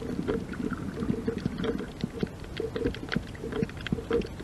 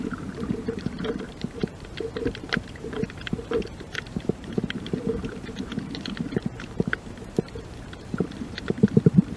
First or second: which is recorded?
first